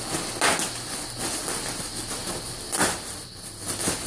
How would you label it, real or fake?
real